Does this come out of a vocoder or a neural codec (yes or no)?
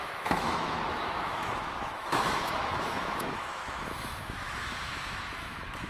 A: yes